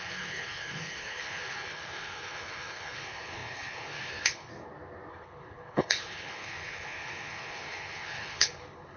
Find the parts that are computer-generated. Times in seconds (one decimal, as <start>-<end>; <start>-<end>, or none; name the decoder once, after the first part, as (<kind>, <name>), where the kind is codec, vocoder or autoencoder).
0.0-4.5 (codec, HILCodec); 5.1-9.0